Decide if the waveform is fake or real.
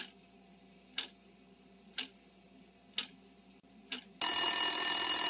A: real